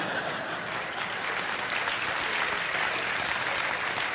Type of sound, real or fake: real